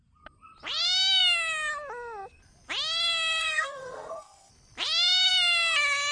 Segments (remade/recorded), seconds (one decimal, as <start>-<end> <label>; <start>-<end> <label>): 0.0-3.4 recorded; 3.4-4.5 remade; 4.5-6.1 recorded